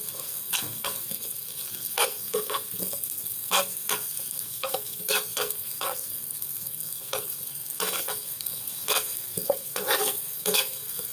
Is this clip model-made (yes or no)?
yes